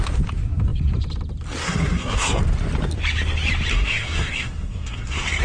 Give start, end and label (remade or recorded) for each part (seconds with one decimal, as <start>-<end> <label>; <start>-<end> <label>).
0.0-1.6 recorded; 1.6-2.4 remade; 2.4-3.7 recorded; 3.7-5.4 remade